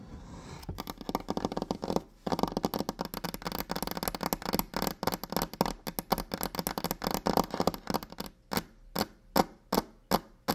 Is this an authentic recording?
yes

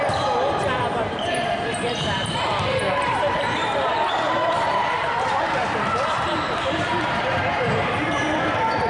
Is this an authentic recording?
no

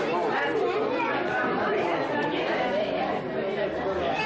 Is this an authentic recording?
yes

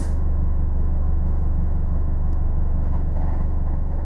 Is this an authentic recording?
no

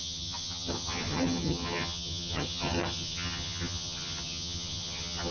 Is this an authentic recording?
no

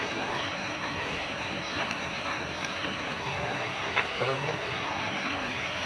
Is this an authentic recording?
no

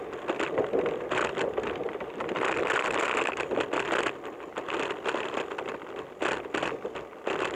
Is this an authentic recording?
yes